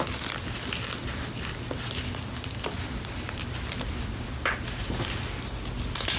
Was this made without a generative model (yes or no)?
yes